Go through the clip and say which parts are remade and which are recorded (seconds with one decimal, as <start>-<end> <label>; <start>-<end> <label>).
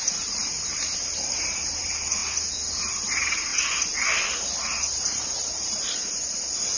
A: 0.0-2.2 remade; 2.2-2.9 recorded; 2.9-3.5 remade; 3.5-4.8 recorded; 4.8-6.8 remade